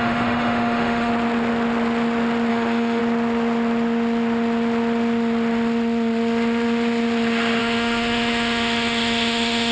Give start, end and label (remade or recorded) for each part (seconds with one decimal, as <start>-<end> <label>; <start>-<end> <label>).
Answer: 0.0-1.1 remade; 1.1-2.5 recorded; 2.5-3.0 remade; 3.0-7.6 recorded; 7.6-9.7 remade